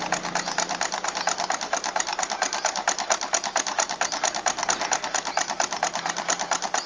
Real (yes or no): yes